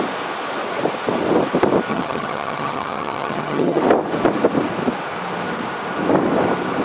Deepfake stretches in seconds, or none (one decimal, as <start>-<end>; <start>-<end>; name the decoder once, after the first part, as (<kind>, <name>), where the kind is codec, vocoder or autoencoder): 1.9-3.8 (vocoder, HiFi-GAN)